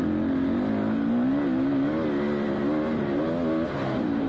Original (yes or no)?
yes